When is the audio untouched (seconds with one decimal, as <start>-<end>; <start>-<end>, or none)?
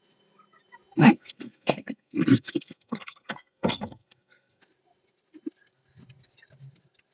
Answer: 0.0-1.0; 4.6-7.1